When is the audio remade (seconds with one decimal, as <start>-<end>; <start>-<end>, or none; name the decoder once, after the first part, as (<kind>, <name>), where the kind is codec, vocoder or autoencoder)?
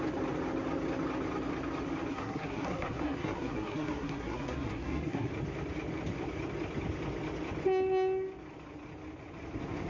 2.1-5.3 (codec, SNAC)